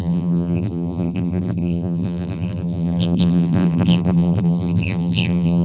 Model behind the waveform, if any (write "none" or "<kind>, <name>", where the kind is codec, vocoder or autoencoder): vocoder, BigVGAN v2